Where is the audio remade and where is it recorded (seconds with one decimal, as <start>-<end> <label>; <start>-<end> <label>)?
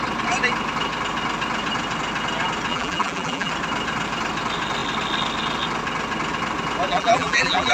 0.0-2.7 recorded; 2.7-3.5 remade; 3.5-6.9 recorded; 6.9-7.7 remade